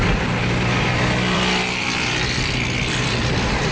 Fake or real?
fake